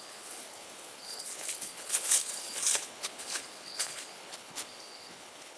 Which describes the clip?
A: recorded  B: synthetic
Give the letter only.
B